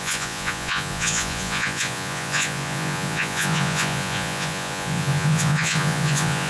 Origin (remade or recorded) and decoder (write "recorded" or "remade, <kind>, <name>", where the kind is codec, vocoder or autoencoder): remade, vocoder, Vocos